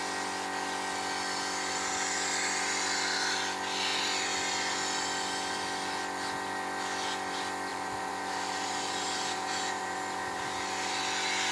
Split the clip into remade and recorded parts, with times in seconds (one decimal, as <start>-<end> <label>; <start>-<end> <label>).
0.0-7.7 recorded; 7.7-11.0 remade; 11.0-11.5 recorded